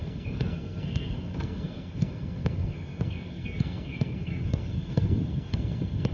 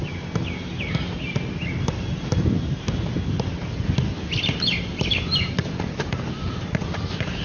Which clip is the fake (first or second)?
first